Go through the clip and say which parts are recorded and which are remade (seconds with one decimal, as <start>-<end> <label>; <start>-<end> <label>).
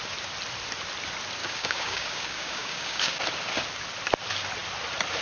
0.0-1.4 recorded; 1.4-3.2 remade; 3.2-5.2 recorded